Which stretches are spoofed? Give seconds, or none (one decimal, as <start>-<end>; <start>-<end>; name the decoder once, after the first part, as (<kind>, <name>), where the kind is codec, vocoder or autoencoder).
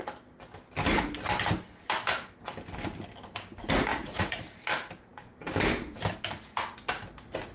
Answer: 3.9-4.4 (vocoder, Vocos)